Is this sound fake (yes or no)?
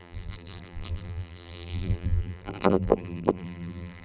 yes